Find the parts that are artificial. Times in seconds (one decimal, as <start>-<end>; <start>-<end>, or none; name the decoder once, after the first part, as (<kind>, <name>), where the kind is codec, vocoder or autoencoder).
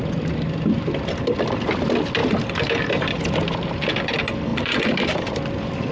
2.2-3.9 (vocoder, BigVGAN v2); 4.5-5.2